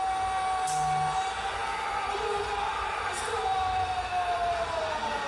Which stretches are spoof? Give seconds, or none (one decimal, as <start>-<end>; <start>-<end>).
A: 1.6-4.8